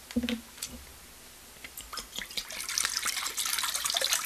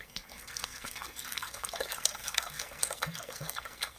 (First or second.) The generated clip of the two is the second